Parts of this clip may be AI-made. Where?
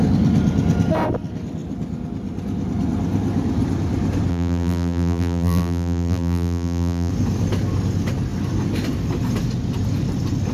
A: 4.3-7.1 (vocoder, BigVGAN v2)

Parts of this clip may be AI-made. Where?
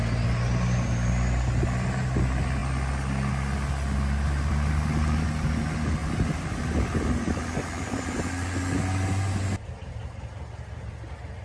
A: none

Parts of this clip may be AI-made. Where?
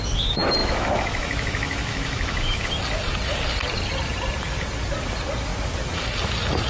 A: 0.6-2.7 (autoencoder, DAC-VAE)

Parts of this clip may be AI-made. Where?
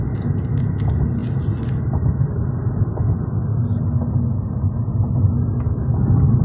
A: none